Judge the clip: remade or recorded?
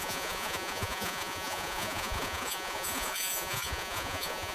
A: remade